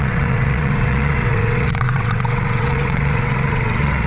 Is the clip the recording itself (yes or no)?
no